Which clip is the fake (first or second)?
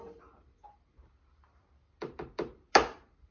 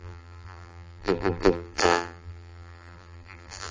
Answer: second